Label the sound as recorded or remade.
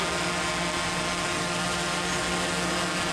recorded